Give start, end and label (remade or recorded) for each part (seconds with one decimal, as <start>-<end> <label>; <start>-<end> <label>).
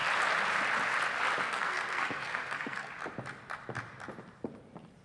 0.0-1.4 recorded; 1.4-2.9 remade; 2.9-5.0 recorded